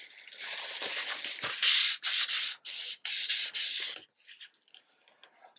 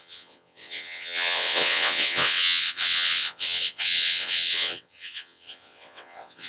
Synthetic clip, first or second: second